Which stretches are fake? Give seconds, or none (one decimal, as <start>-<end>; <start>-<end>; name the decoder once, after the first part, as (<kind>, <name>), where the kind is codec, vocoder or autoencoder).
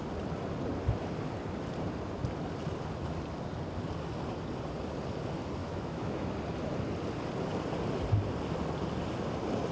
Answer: 5.6-6.3 (autoencoder, DAC-VAE)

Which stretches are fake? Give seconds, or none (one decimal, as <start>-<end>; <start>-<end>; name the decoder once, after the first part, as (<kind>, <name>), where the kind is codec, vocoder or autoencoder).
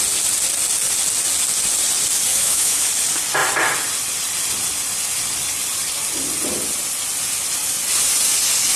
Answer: 2.3-2.9 (autoencoder, DAC-VAE)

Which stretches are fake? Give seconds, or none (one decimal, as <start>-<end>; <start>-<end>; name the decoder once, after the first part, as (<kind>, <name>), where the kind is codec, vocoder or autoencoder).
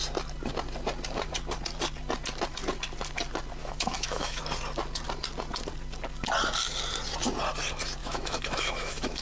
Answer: 3.6-4.4 (autoencoder, DAC-VAE); 8.0-9.2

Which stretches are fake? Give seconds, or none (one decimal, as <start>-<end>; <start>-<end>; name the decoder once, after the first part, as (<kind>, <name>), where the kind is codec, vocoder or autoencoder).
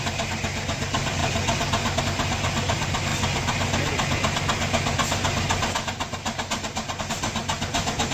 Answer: none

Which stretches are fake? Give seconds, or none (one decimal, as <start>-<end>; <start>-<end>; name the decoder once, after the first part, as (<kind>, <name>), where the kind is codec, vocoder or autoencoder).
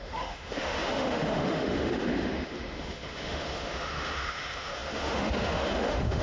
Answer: 0.0-6.2 (autoencoder, DAC-VAE)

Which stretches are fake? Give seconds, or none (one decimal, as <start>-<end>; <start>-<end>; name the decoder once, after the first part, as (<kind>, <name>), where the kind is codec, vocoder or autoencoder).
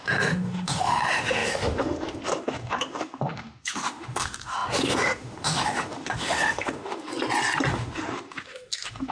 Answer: 0.0-7.1 (autoencoder, DAC-VAE); 7.7-9.1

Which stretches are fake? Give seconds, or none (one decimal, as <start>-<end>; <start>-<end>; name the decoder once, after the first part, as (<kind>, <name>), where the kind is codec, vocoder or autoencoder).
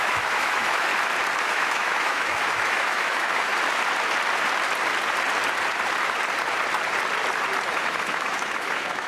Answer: 0.0-0.9 (autoencoder, DAC-VAE); 1.4-3.5; 7.8-9.1